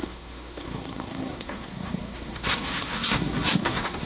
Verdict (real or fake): fake